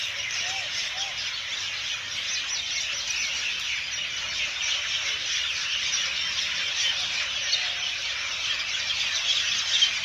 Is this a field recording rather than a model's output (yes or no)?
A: yes